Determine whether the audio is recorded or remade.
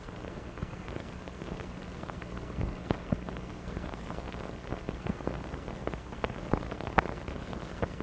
remade